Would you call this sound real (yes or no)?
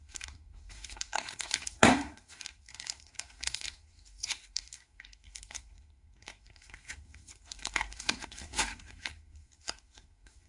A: no